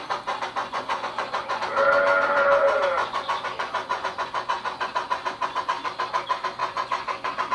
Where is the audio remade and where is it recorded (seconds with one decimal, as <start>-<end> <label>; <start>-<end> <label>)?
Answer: 0.0-0.6 recorded; 0.6-1.6 remade; 1.6-3.0 recorded; 3.0-5.6 remade; 5.6-6.6 recorded; 6.6-7.5 remade